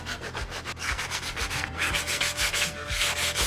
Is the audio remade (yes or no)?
yes